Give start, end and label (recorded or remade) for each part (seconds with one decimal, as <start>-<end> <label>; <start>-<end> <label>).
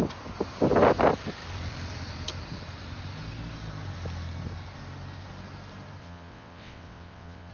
0.0-6.0 recorded; 6.0-7.5 remade